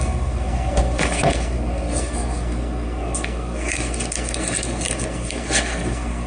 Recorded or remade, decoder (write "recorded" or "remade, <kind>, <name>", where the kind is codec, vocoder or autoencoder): remade, codec, SNAC